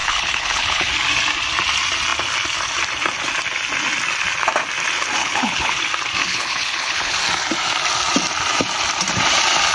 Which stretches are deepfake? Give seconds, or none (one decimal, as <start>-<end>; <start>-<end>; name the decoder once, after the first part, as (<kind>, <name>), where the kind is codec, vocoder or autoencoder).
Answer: 0.0-0.9 (codec, HILCodec); 5.2-5.8; 6.2-7.2